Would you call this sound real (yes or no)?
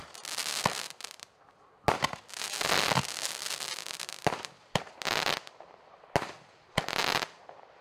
yes